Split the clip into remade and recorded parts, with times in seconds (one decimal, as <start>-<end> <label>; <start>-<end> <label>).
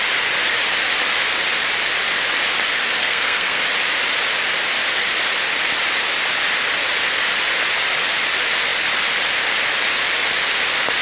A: 0.0-3.0 recorded; 3.0-3.6 remade; 3.6-11.0 recorded